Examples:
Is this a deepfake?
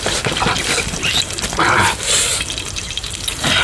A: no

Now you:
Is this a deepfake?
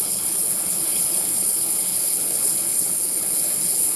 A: yes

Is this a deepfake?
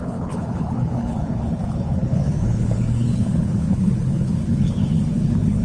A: yes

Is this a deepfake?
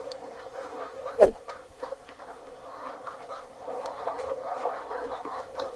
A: yes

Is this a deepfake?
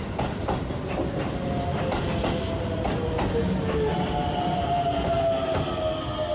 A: no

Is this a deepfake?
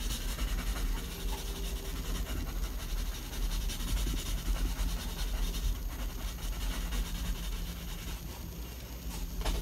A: no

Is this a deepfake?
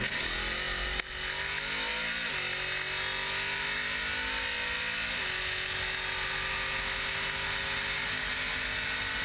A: no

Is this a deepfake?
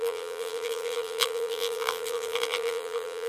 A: yes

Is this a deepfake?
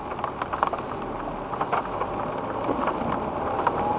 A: no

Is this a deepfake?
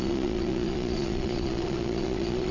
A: yes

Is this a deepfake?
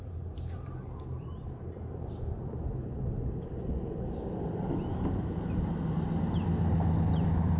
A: no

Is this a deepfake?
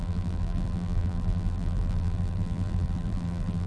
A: yes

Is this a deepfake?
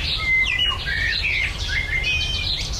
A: yes